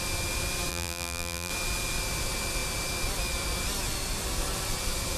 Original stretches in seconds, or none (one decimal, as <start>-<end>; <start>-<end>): 0.0-0.7; 1.5-5.2